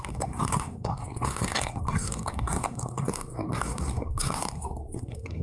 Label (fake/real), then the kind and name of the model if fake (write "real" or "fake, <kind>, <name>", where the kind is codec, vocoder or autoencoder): fake, codec, SNAC